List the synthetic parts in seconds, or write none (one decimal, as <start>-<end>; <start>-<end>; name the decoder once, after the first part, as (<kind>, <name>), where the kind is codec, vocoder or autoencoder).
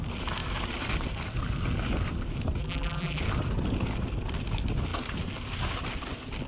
2.6-3.2 (vocoder, BigVGAN v2)